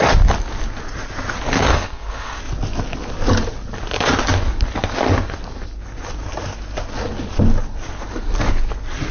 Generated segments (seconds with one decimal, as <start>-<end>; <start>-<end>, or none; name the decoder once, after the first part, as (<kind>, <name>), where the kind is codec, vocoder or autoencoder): 1.7-2.4 (codec, SNAC)